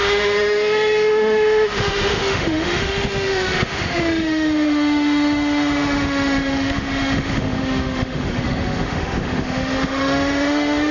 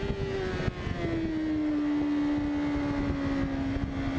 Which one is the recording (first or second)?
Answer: second